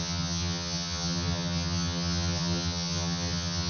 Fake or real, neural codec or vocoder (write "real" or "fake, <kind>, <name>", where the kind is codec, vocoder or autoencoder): fake, vocoder, HiFi-GAN